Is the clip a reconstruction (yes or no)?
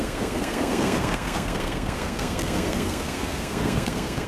yes